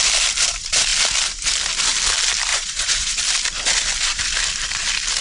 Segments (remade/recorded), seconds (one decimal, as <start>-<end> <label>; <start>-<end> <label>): 0.0-2.5 recorded; 2.5-3.2 remade; 3.2-5.2 recorded